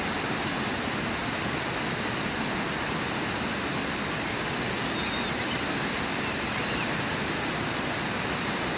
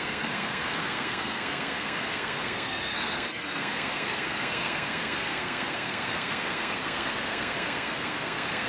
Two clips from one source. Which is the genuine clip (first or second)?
first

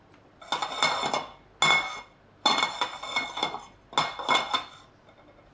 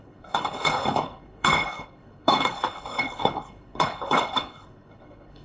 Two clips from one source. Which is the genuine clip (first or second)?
first